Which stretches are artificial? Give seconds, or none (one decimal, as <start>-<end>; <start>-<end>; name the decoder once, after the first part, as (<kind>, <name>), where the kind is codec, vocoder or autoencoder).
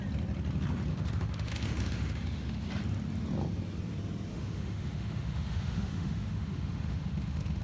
0.9-2.7 (autoencoder, DAC-VAE); 4.3-7.6